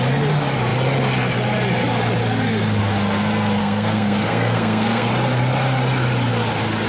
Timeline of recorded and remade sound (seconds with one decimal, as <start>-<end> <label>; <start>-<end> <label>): 0.0-3.6 recorded; 3.6-5.1 remade; 5.1-6.9 recorded